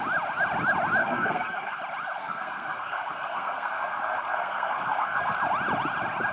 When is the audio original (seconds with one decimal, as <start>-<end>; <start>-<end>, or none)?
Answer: 0.0-1.0; 1.8-2.2; 5.4-6.3